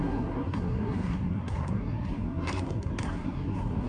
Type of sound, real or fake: fake